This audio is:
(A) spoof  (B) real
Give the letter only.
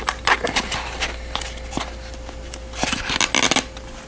B